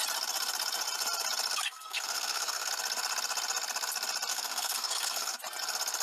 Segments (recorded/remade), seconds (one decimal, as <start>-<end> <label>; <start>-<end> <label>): 0.0-1.5 recorded; 1.5-2.7 remade; 2.7-4.3 recorded; 4.3-5.4 remade; 5.4-6.0 recorded